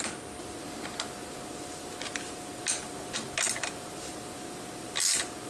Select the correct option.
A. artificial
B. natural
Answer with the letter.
B